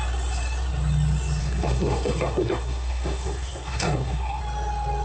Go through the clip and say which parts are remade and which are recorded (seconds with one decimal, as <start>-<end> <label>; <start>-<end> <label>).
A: 0.0-1.4 recorded; 1.4-4.4 remade; 4.4-5.0 recorded